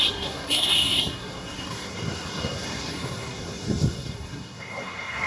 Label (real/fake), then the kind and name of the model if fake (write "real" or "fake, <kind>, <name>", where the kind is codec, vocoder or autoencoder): fake, codec, SNAC